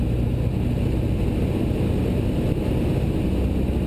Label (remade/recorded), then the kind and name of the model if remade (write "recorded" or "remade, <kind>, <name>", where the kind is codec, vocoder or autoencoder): recorded